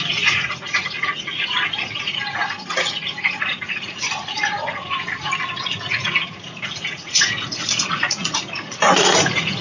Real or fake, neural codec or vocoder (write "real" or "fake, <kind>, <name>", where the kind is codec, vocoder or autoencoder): fake, vocoder, Vocos